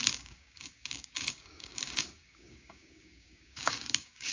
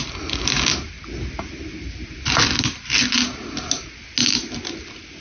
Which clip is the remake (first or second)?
first